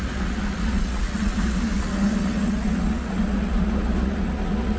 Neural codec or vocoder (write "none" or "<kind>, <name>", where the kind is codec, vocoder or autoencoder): vocoder, Vocos